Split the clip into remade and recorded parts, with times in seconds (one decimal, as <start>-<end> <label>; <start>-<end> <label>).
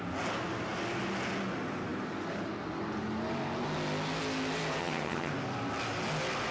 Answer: 0.0-4.8 recorded; 4.8-5.3 remade; 5.3-6.5 recorded